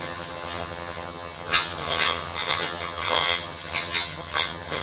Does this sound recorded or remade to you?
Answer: remade